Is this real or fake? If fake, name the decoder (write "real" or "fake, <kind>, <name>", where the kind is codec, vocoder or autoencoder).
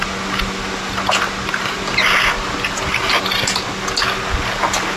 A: real